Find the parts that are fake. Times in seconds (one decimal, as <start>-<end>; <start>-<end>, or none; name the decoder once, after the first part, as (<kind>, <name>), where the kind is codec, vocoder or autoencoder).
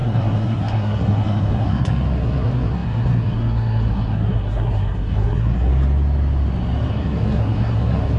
0.0-5.7 (codec, SNAC); 6.9-8.2